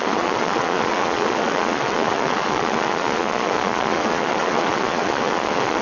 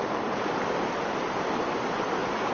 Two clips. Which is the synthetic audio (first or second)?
first